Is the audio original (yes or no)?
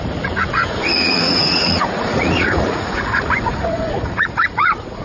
no